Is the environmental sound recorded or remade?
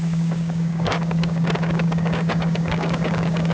remade